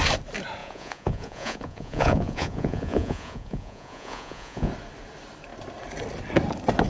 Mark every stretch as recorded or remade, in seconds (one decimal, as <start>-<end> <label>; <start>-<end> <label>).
0.0-0.6 recorded; 0.6-4.7 remade; 4.7-6.9 recorded